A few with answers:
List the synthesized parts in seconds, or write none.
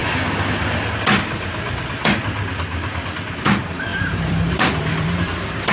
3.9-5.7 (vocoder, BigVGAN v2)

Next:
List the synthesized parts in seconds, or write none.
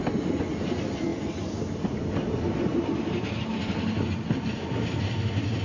none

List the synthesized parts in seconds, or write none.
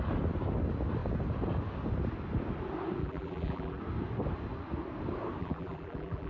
3.0-3.8 (vocoder, BigVGAN v2); 5.4-6.3